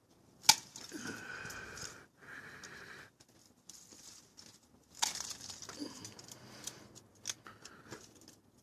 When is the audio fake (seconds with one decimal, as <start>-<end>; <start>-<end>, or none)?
none